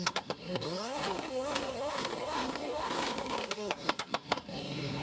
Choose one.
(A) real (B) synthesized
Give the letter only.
B